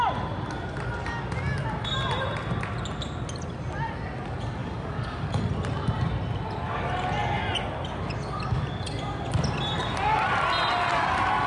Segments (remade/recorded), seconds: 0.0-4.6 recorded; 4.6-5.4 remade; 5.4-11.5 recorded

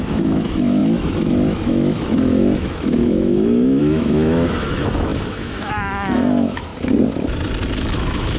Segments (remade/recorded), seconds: 0.0-6.7 remade; 6.7-7.8 recorded; 7.8-8.4 remade